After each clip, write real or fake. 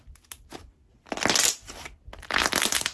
real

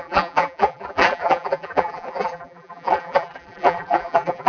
fake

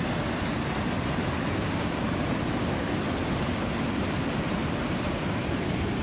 fake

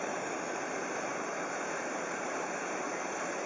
fake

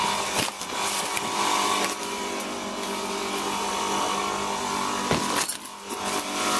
real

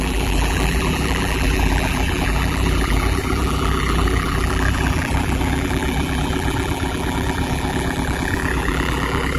fake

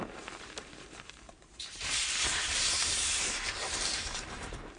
fake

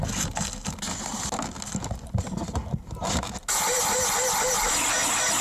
real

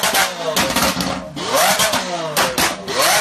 real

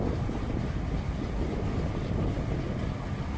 real